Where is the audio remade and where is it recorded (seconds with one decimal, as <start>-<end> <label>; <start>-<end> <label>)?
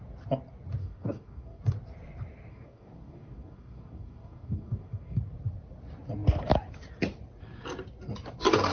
0.0-0.8 recorded; 0.8-1.6 remade; 1.6-2.5 recorded; 2.5-5.2 remade; 5.2-8.7 recorded